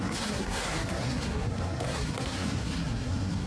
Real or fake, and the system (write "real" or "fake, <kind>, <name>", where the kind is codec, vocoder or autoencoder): fake, codec, SNAC